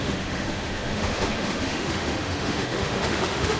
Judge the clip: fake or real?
fake